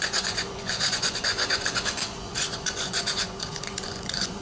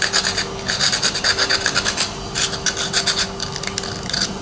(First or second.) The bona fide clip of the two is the second